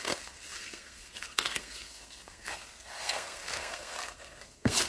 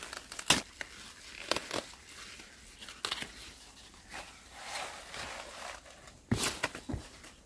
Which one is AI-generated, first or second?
first